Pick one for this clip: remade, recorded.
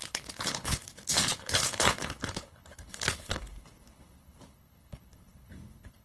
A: remade